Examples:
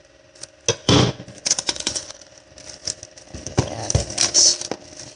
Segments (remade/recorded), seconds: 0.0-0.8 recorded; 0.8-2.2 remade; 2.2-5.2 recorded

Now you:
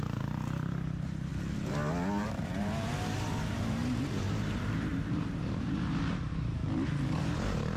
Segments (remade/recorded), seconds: 0.0-1.3 remade; 1.3-2.2 recorded; 2.2-6.6 remade; 6.6-7.2 recorded; 7.2-7.8 remade